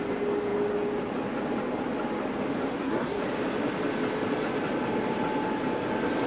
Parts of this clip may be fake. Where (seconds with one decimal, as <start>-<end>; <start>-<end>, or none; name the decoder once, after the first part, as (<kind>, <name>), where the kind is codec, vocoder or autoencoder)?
2.7-3.2 (codec, SNAC)